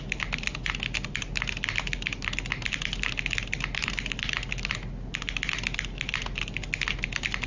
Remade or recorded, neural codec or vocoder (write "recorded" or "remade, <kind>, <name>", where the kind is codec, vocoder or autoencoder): recorded